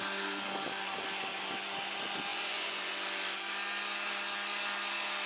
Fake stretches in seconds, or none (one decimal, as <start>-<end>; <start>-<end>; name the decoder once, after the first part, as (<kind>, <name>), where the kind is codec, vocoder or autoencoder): 2.3-2.9 (vocoder, Vocos)